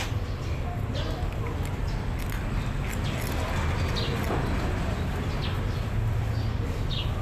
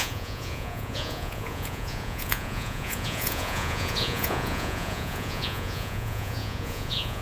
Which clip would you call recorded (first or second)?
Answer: first